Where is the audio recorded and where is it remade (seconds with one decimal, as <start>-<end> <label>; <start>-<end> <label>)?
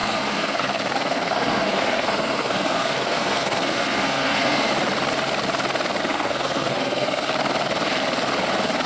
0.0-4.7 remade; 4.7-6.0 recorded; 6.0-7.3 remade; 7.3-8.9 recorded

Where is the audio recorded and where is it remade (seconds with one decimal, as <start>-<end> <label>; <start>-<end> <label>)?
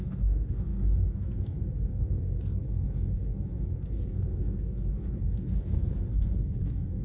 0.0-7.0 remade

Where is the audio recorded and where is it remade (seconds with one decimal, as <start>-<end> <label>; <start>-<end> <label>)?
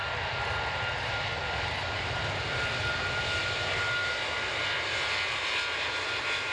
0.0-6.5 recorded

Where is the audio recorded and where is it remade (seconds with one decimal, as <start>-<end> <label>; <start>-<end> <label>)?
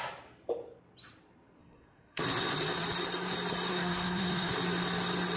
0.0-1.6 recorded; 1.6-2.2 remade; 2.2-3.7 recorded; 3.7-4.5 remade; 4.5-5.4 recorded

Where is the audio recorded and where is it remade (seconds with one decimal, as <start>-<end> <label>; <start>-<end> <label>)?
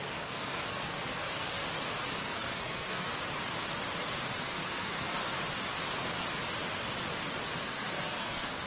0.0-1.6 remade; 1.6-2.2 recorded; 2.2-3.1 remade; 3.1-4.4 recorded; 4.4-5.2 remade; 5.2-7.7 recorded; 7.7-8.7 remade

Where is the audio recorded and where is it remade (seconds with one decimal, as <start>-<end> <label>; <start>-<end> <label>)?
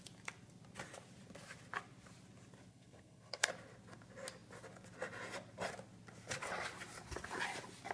0.0-2.7 recorded; 2.7-3.5 remade; 3.5-7.9 recorded